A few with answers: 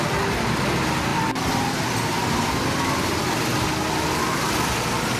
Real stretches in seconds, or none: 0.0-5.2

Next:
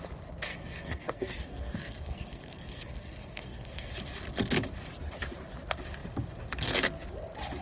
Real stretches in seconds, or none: 0.0-0.5; 3.9-7.6

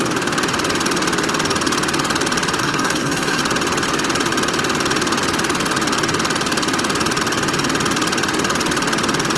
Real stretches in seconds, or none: 0.0-2.6; 3.4-9.4

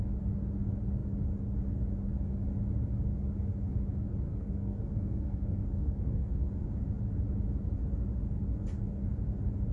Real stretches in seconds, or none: 0.0-4.3; 6.7-9.7